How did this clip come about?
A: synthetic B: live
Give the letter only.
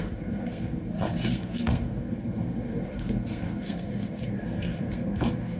A